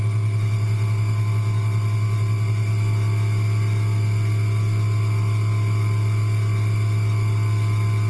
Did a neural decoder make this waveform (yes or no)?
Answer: no